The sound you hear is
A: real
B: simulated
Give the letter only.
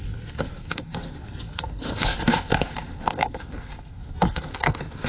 B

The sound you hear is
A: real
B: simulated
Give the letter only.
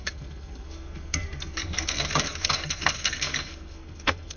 B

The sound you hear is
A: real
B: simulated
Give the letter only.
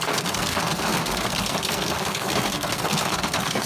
B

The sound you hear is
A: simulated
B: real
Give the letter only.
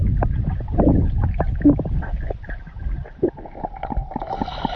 B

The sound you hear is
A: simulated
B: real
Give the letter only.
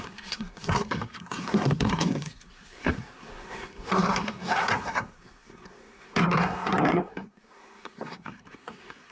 A